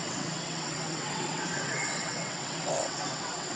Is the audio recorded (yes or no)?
no